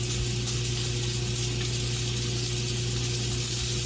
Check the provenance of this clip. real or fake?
real